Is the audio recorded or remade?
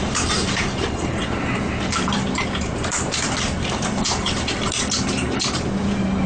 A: remade